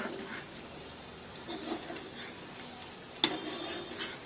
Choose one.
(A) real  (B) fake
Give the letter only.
A